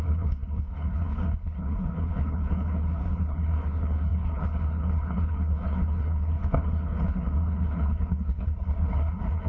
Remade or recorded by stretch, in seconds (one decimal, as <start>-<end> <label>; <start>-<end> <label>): 0.0-9.5 remade